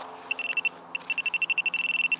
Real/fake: real